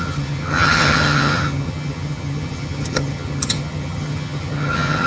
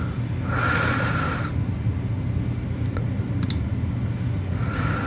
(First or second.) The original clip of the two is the second